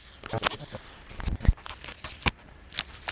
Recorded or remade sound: recorded